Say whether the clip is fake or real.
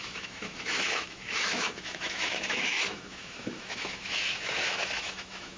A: fake